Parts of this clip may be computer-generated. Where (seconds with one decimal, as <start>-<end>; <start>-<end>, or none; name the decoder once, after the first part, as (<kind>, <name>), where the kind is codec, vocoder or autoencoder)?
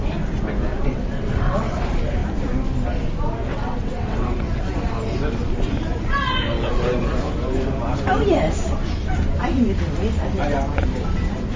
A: 0.7-1.8 (vocoder, WaveNeXt); 3.5-4.7